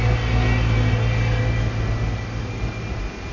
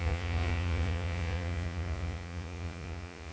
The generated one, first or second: second